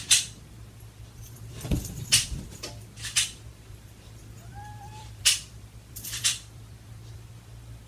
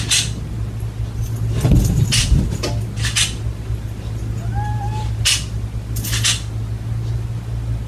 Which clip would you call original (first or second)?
second